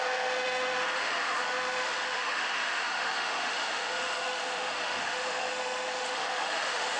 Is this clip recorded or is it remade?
remade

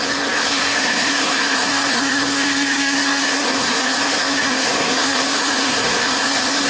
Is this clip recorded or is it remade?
remade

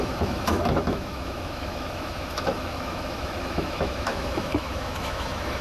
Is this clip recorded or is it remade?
remade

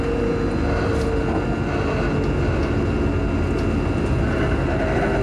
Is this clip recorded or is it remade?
recorded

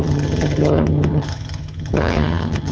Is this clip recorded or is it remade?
remade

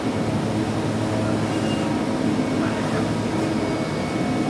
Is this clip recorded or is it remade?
recorded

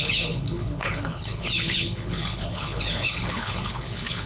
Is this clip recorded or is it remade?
remade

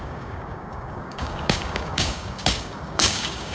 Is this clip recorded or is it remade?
remade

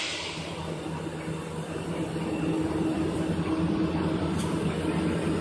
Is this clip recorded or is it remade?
recorded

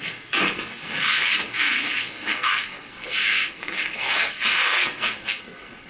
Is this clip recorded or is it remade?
remade